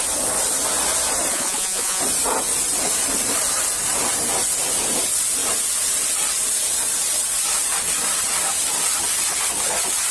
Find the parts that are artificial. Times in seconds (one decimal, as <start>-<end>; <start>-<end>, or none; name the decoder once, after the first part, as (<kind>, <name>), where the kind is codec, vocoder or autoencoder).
1.3-2.0 (vocoder, Vocos)